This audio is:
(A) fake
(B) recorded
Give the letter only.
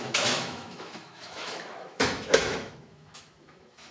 A